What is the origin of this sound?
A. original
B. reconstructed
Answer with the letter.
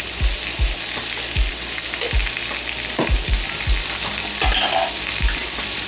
A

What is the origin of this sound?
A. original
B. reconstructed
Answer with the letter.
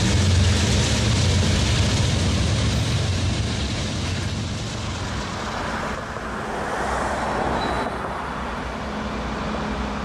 A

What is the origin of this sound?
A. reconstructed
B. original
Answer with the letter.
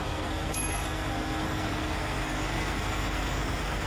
A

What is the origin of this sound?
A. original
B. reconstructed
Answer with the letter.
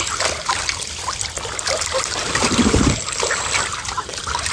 A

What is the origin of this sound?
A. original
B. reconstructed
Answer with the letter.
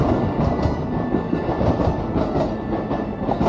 A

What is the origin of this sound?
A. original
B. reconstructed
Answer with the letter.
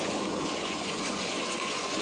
B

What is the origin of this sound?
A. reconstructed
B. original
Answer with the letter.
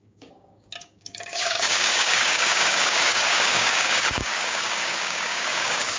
A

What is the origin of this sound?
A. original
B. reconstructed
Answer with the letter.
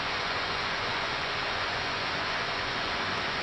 B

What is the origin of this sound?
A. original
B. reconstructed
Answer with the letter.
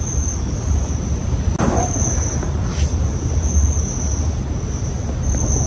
A